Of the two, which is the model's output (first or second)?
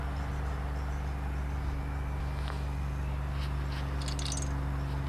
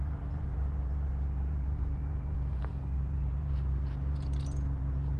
second